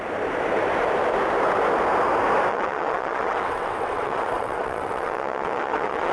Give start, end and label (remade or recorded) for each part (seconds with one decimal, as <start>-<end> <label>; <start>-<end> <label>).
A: 0.0-2.5 recorded; 2.5-6.1 remade